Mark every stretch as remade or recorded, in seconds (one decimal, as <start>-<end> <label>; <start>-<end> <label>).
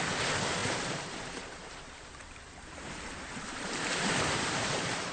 0.0-0.6 recorded; 0.6-1.2 remade; 1.2-1.6 recorded; 1.6-5.1 remade